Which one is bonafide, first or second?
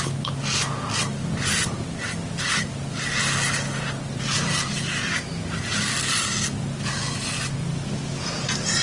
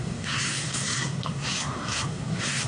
first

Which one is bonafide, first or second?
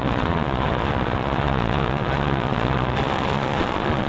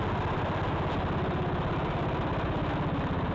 second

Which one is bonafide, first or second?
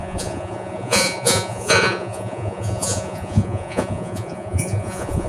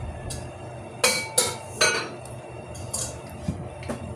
second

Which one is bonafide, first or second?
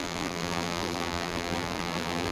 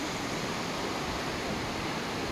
second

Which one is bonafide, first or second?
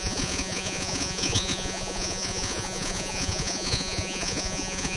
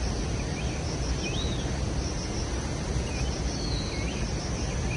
second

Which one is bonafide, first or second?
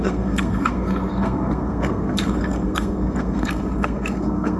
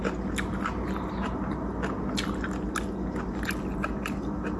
second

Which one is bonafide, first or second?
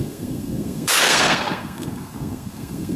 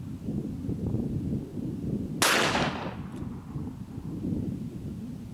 second